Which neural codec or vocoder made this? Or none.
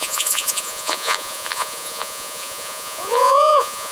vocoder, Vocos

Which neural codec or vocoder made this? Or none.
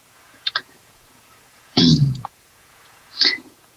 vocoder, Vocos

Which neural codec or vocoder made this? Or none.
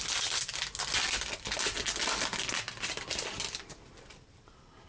none